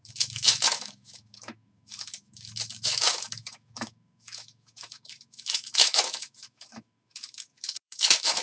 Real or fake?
fake